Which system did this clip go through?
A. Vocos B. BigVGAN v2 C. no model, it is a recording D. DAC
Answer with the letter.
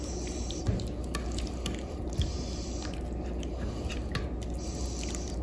C